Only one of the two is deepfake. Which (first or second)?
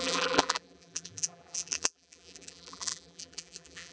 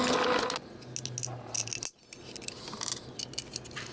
first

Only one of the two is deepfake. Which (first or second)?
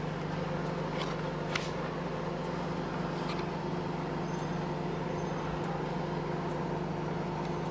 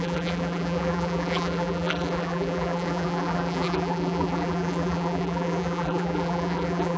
second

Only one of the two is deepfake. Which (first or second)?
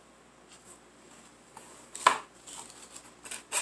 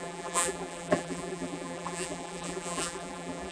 second